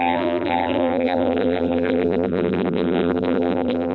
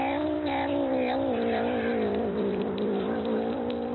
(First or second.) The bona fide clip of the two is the second